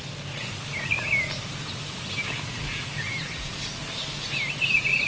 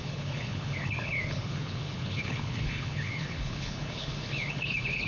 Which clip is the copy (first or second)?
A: second